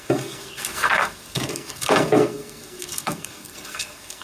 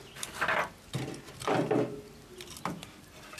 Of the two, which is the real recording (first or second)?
second